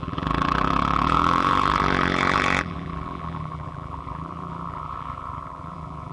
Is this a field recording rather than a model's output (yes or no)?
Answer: no